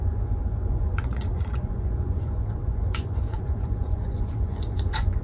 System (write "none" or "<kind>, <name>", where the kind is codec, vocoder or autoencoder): vocoder, Vocos